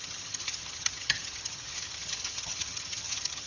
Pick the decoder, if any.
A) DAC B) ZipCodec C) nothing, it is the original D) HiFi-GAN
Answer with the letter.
D